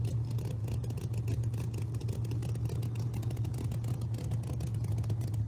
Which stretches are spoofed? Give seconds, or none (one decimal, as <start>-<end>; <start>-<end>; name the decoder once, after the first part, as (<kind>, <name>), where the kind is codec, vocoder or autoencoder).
none